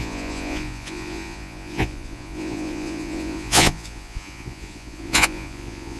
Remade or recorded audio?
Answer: remade